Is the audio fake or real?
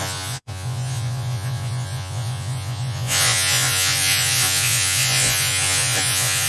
fake